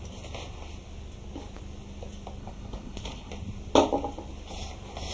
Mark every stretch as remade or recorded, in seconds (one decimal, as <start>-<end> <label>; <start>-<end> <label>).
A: 0.0-2.4 recorded; 2.4-3.3 remade; 3.3-5.1 recorded